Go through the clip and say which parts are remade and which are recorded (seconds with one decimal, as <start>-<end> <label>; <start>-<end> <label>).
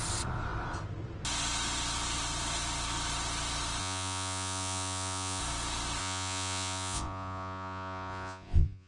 0.0-3.8 recorded; 3.8-5.4 remade; 5.4-6.0 recorded; 6.0-8.9 remade